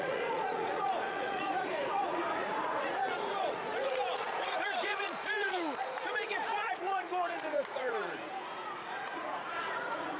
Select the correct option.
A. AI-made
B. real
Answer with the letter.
A